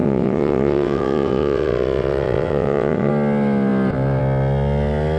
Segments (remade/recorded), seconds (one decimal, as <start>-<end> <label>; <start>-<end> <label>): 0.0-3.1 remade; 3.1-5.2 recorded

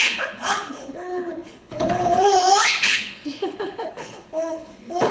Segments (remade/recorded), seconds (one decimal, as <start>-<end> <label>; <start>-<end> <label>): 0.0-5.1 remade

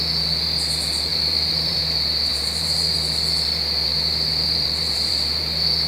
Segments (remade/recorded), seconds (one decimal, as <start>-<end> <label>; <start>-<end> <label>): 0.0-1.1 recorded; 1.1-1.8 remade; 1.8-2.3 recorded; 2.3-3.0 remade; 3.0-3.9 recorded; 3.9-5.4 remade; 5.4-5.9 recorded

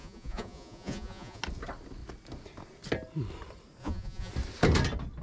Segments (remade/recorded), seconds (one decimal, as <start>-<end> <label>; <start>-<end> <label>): 0.0-1.4 remade; 1.4-3.8 recorded; 3.8-4.3 remade; 4.3-5.2 recorded

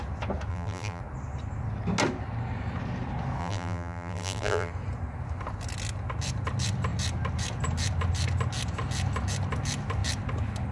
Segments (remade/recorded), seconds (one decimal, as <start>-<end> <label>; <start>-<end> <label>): 0.0-0.5 recorded; 0.5-1.0 remade; 1.0-3.4 recorded; 3.4-4.7 remade; 4.7-10.7 recorded

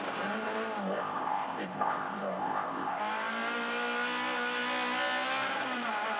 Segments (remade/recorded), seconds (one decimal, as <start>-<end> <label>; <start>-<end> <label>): 0.0-0.8 recorded; 0.8-3.0 remade; 3.0-6.2 recorded

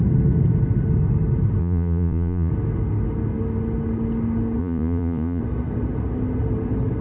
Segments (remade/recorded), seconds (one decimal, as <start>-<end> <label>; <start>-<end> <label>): 0.0-1.6 recorded; 1.6-2.5 remade; 2.5-4.6 recorded; 4.6-5.4 remade; 5.4-7.0 recorded

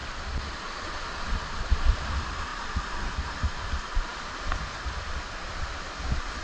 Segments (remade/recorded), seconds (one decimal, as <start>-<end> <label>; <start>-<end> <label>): 0.0-1.3 recorded; 1.3-4.1 remade; 4.1-5.5 recorded; 5.5-6.4 remade